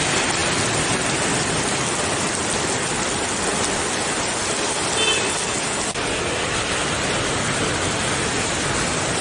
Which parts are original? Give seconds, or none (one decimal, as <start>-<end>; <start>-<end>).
0.0-9.2